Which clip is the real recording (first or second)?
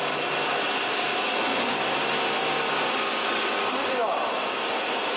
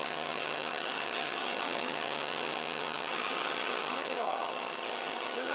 first